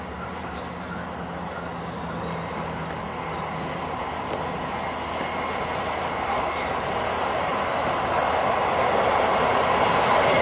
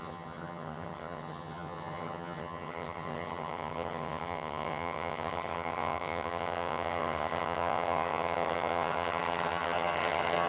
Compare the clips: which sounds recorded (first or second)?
first